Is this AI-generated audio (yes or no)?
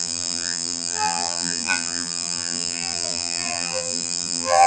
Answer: yes